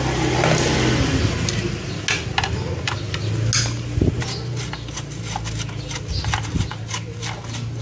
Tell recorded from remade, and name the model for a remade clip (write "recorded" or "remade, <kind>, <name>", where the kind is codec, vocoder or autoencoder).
recorded